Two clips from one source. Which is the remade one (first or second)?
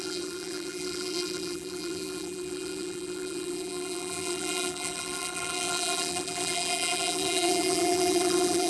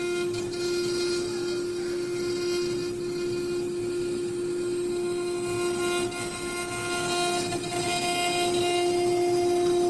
first